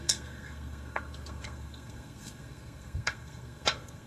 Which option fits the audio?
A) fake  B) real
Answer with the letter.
A